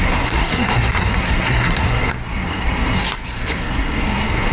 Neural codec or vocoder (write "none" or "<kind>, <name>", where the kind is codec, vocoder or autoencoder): codec, SNAC